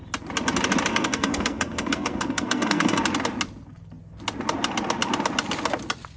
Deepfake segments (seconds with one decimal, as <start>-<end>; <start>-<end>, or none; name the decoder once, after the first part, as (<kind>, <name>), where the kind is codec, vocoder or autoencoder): 0.9-3.0 (codec, SNAC)